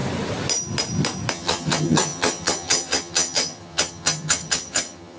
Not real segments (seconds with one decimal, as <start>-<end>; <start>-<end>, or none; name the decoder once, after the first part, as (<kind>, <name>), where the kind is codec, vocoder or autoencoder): 1.3-5.2 (vocoder, HiFi-GAN)